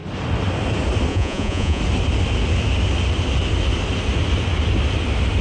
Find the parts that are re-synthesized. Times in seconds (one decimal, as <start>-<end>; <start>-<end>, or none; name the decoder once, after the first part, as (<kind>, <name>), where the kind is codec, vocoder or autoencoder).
1.1-1.8 (vocoder, Vocos)